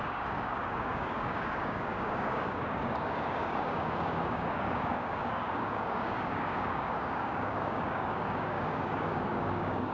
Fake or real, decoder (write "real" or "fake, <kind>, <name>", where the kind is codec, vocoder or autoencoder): fake, codec, DAC